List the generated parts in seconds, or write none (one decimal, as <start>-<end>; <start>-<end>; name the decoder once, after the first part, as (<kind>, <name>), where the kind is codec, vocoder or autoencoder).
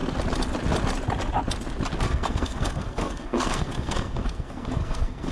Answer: 2.0-5.3 (codec, SNAC)